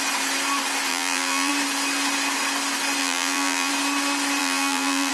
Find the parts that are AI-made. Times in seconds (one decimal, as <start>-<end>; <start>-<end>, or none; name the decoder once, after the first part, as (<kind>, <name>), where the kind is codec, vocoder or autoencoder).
0.9-1.5 (vocoder, BigVGAN v2); 3.0-3.7; 4.4-5.1